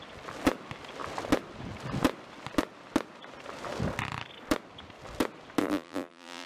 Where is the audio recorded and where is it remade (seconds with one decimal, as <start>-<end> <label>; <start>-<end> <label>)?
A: 0.0-5.6 recorded; 5.6-6.5 remade